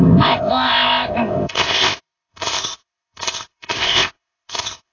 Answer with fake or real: fake